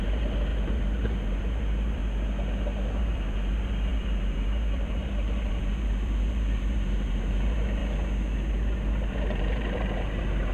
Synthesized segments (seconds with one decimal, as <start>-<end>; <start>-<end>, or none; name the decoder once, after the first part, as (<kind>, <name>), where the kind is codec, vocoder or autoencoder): 0.0-2.0 (vocoder, BigVGAN v2); 3.0-7.8; 8.5-10.5